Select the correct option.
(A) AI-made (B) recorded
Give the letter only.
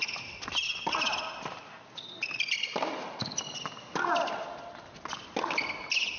B